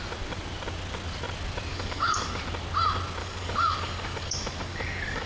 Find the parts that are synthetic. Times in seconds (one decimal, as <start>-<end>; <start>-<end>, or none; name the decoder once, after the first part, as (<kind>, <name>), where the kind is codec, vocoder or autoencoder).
1.7-2.4 (codec, DAC); 3.2-5.3